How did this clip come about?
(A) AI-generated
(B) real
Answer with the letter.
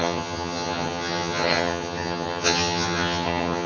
A